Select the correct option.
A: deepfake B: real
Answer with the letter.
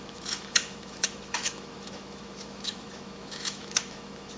A